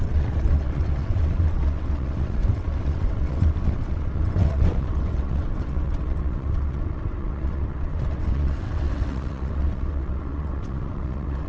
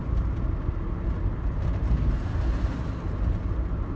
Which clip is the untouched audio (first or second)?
second